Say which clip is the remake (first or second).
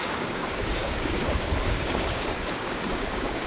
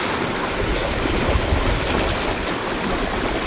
first